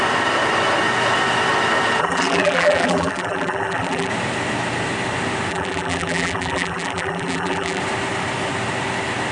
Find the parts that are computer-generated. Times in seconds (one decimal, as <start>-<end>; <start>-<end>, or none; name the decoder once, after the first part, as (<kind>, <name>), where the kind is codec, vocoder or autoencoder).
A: 2.0-4.1 (vocoder, BigVGAN v2); 5.5-7.8